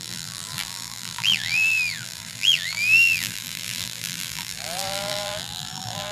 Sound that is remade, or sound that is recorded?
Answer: remade